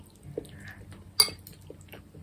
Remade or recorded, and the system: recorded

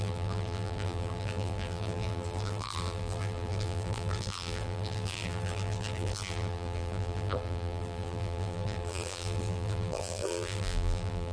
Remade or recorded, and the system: remade, vocoder, BigVGAN v2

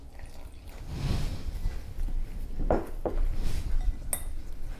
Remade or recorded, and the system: recorded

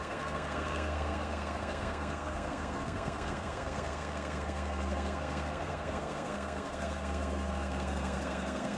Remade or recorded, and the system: remade, codec, SNAC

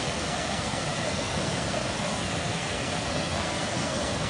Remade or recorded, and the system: remade, codec, SNAC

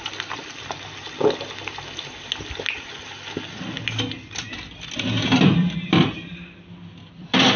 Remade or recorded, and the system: recorded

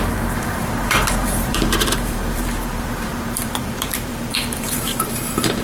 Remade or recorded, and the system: remade, vocoder, BigVGAN v2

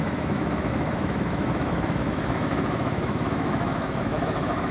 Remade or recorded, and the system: remade, autoencoder, DAC-VAE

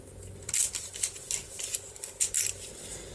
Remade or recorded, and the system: recorded